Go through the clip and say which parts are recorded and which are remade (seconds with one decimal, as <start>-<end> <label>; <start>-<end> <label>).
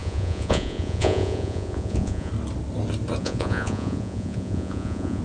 0.0-2.3 remade; 2.3-3.2 recorded; 3.2-5.2 remade